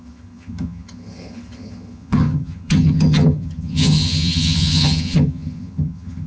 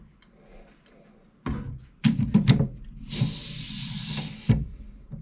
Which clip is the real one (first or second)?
second